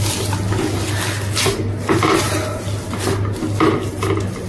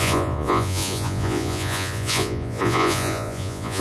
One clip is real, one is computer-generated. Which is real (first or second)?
first